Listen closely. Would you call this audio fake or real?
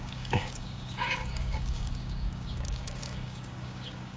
fake